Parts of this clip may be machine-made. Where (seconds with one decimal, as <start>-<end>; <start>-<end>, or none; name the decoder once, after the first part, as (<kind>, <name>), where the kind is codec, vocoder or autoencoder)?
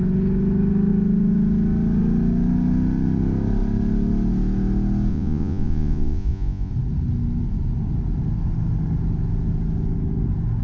5.1-6.7 (vocoder, Vocos)